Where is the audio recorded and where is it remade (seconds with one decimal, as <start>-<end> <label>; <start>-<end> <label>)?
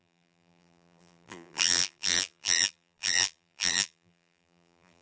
0.0-5.0 remade